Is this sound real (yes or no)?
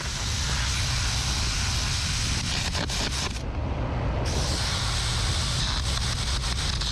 yes